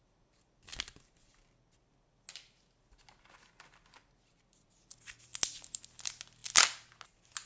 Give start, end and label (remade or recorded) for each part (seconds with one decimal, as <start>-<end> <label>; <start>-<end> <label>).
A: 0.0-7.5 recorded

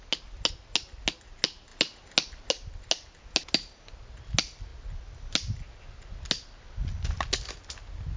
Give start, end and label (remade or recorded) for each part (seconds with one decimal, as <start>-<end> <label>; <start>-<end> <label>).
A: 0.0-8.2 recorded

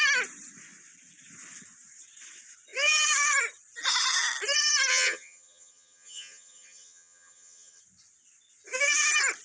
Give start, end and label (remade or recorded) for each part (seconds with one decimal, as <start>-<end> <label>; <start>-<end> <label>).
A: 0.0-4.9 recorded; 4.9-7.8 remade; 7.8-9.4 recorded